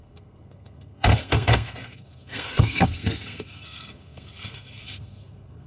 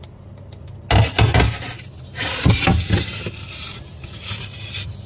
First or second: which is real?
second